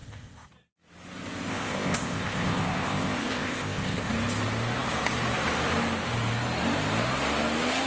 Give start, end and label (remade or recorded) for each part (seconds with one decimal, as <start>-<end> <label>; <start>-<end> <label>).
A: 0.0-0.5 remade; 0.5-1.5 recorded; 1.5-4.1 remade; 4.1-7.9 recorded